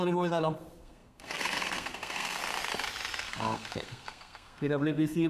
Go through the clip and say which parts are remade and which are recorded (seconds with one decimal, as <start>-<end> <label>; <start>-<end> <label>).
0.0-2.4 remade; 2.4-3.2 recorded; 3.2-5.3 remade